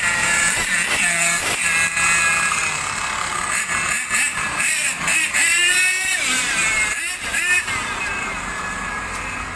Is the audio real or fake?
real